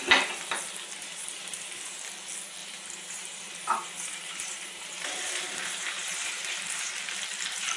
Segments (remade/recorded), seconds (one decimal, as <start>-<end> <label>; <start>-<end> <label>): 0.0-1.0 recorded; 1.0-2.0 remade; 2.0-2.6 recorded; 2.6-6.9 remade; 6.9-7.8 recorded